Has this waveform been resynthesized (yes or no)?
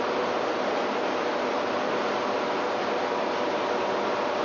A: yes